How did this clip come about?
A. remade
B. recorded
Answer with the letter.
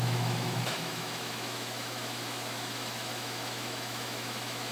A